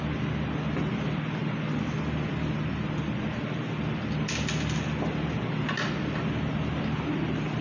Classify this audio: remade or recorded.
recorded